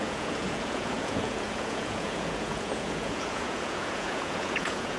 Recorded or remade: remade